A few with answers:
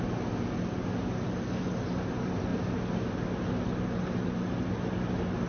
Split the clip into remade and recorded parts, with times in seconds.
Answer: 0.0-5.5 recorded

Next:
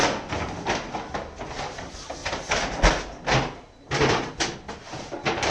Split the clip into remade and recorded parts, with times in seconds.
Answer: 0.0-2.2 recorded; 2.2-2.9 remade; 2.9-5.5 recorded

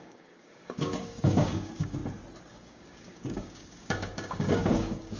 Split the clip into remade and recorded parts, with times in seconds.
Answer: 0.0-2.0 remade; 2.0-2.5 recorded; 2.5-5.2 remade

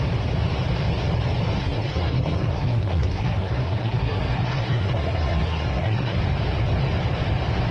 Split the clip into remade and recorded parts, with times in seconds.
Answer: 0.0-1.6 recorded; 1.6-6.2 remade; 6.2-7.7 recorded

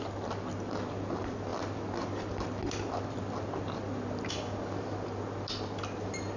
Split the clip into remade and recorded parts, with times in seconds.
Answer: 0.0-6.4 recorded

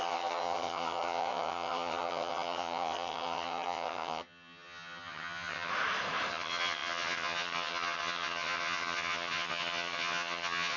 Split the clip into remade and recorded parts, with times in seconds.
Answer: 0.0-5.7 remade; 5.7-6.3 recorded; 6.3-10.8 remade